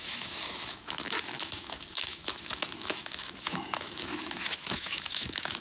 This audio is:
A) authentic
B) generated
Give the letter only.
B